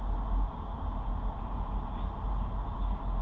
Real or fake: real